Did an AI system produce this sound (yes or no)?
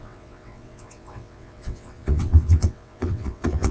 yes